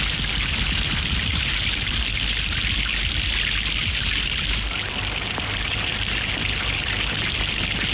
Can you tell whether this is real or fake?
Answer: real